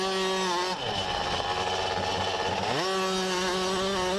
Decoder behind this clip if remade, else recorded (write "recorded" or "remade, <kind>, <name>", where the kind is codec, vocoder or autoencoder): recorded